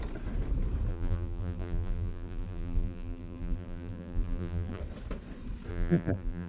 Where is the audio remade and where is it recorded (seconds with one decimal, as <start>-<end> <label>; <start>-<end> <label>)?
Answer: 0.0-0.9 recorded; 0.9-4.8 remade; 4.8-5.7 recorded; 5.7-6.5 remade